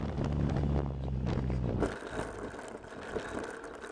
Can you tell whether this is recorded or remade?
recorded